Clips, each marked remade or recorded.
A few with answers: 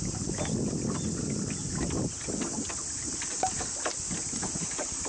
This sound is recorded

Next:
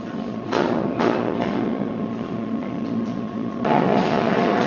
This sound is remade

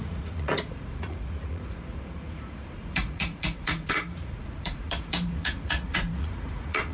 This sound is remade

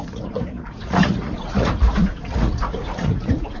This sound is remade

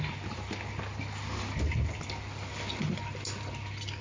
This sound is recorded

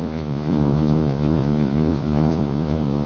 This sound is remade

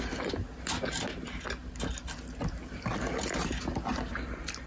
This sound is recorded